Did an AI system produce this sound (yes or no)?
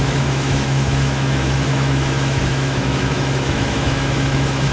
yes